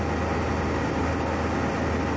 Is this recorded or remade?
recorded